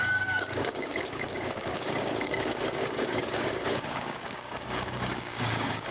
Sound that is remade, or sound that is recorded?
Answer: remade